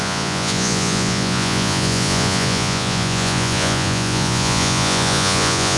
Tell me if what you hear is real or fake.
fake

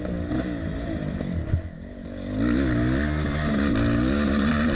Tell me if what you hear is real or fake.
real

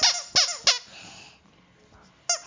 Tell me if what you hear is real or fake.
real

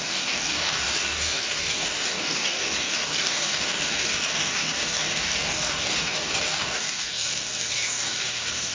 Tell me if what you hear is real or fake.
fake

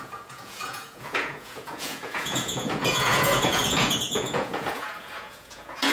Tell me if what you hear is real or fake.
fake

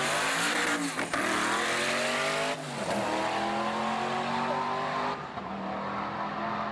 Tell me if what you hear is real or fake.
real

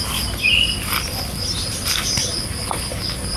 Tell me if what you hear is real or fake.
real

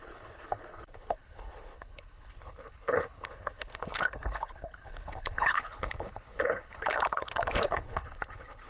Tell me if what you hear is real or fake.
fake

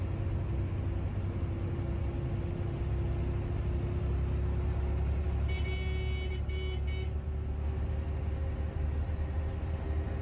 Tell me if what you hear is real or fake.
real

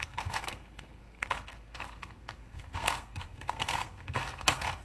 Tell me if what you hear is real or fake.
fake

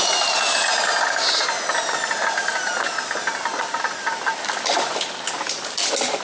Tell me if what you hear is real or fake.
real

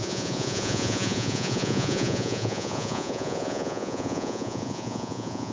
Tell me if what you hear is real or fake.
fake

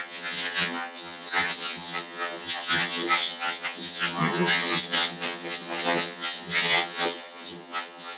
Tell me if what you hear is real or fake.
fake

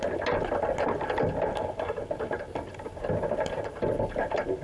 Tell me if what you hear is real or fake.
real